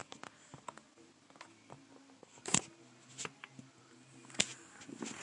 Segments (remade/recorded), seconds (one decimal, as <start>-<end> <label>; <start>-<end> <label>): 0.0-5.2 recorded